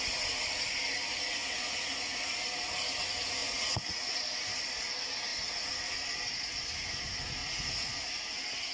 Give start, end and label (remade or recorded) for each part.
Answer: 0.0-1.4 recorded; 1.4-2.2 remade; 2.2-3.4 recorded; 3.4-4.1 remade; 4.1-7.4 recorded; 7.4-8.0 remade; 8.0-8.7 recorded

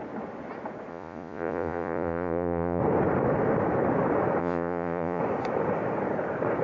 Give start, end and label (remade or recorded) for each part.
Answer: 0.0-0.9 recorded; 0.9-2.8 remade; 2.8-4.4 recorded; 4.4-5.2 remade; 5.2-6.6 recorded

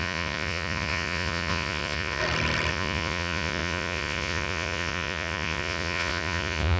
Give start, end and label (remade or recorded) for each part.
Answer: 0.0-2.2 remade; 2.2-2.7 recorded; 2.7-6.8 remade

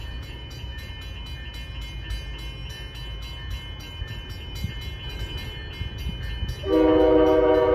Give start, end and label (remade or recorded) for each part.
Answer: 0.0-0.9 remade; 0.9-7.7 recorded

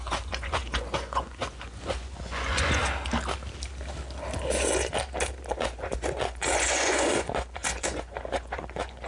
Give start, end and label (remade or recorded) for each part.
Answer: 0.0-2.8 remade; 2.8-5.5 recorded; 5.5-9.1 remade

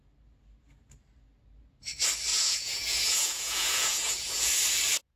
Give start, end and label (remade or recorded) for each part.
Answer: 0.0-2.3 recorded; 2.3-4.5 remade; 4.5-5.2 recorded

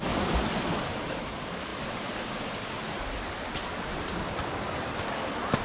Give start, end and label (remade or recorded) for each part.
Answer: 0.0-5.6 recorded

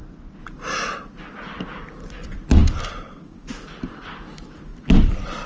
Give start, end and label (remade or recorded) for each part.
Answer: 0.0-5.5 recorded